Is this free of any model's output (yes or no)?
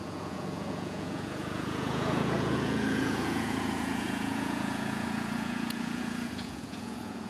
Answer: no